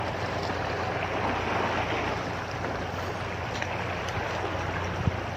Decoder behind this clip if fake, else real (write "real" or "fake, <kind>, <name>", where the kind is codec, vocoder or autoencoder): real